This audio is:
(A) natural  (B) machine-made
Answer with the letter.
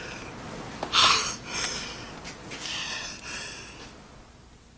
A